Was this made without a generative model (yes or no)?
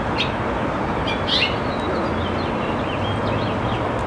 yes